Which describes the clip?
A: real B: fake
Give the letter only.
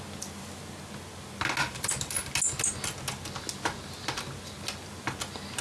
A